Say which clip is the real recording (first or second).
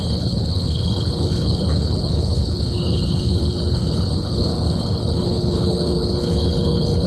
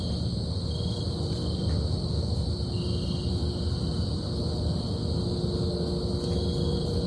second